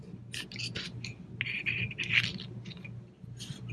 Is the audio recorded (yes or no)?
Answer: yes